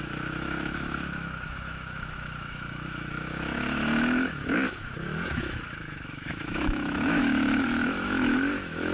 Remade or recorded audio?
remade